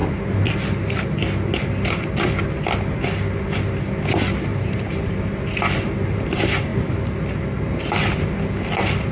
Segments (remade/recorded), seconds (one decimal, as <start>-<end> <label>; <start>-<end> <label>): 0.0-4.5 recorded; 4.5-5.4 remade; 5.4-9.1 recorded